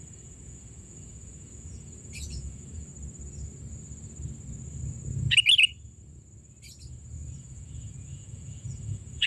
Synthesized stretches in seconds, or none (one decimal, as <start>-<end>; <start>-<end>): 0.0-2.9; 7.4-9.3